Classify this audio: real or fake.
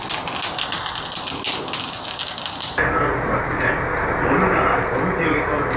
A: real